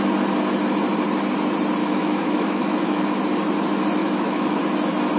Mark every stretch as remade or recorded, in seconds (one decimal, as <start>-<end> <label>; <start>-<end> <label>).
0.0-1.8 recorded; 1.8-3.0 remade; 3.0-4.0 recorded; 4.0-4.6 remade; 4.6-5.2 recorded